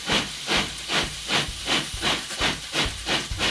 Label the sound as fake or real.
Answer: real